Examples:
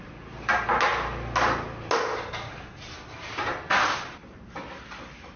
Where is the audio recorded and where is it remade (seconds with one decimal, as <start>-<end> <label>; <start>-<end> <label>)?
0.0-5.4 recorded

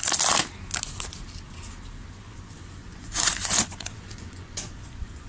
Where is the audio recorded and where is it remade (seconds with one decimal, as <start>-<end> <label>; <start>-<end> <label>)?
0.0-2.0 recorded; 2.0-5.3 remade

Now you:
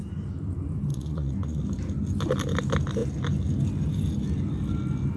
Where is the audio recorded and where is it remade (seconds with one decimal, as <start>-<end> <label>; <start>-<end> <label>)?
0.0-0.9 recorded; 0.9-1.6 remade; 1.6-5.2 recorded